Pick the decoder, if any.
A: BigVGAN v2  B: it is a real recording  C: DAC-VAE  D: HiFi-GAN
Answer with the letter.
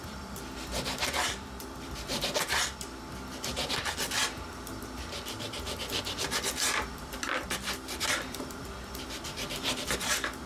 A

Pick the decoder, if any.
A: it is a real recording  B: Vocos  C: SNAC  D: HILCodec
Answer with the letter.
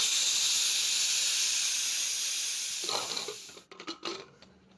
A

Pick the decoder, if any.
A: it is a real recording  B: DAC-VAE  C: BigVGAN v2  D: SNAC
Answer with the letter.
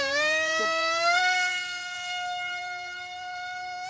C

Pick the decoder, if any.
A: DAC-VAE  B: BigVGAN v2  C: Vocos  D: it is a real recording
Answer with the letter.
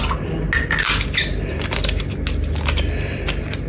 D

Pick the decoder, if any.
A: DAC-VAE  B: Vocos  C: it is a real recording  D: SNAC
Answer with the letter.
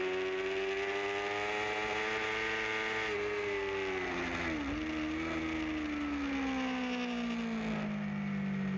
C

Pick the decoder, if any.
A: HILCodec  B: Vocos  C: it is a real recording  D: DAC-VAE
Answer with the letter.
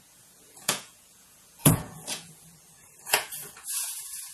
B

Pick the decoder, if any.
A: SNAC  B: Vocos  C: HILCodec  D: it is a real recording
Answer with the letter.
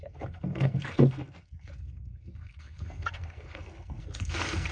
A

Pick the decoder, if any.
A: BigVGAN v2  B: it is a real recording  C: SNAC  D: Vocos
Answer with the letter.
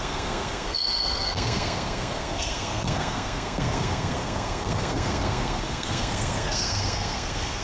C